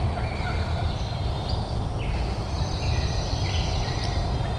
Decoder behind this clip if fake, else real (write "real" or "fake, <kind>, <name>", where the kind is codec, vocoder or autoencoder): fake, vocoder, BigVGAN v2